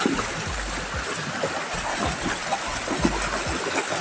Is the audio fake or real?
real